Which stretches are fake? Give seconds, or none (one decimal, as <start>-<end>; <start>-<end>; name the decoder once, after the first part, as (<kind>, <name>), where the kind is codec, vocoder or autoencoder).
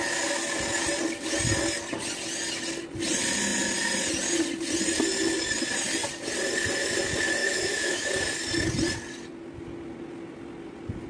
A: 7.4-8.1 (autoencoder, DAC-VAE)